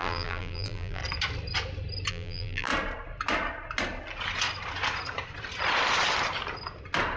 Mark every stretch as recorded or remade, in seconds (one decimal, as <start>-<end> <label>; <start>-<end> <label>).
0.0-1.0 remade; 1.0-2.1 recorded; 2.1-2.7 remade; 2.7-7.2 recorded